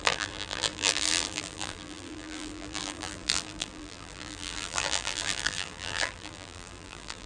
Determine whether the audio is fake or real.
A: fake